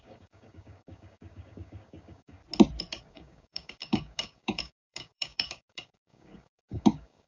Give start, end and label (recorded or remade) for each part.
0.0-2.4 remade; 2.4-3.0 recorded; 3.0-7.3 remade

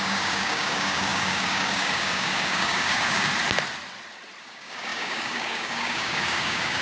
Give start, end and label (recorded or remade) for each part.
0.0-3.3 remade; 3.3-4.4 recorded; 4.4-6.8 remade

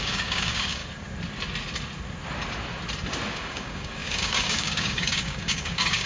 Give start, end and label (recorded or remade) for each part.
0.0-0.8 remade; 0.8-3.3 recorded; 3.3-6.1 remade

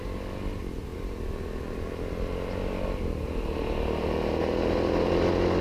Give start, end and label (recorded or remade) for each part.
0.0-5.6 recorded

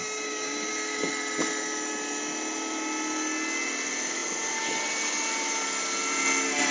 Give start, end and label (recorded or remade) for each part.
0.0-1.1 remade; 1.1-6.7 recorded

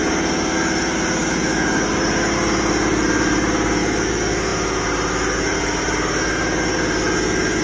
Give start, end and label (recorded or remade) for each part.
0.0-7.6 recorded

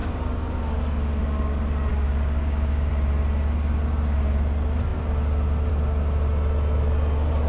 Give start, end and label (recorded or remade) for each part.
0.0-0.6 remade; 0.6-1.9 recorded; 1.9-2.9 remade; 2.9-7.5 recorded